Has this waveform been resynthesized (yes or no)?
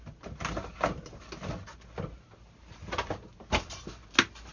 no